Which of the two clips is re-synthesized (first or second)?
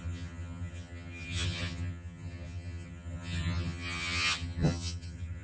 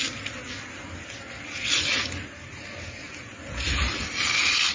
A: first